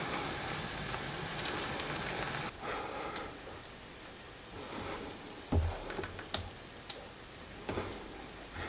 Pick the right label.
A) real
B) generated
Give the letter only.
A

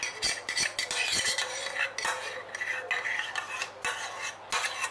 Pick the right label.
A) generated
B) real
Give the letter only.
B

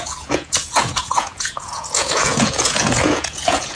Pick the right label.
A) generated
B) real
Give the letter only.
A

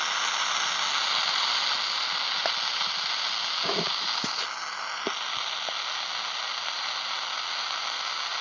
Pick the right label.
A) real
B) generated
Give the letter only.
A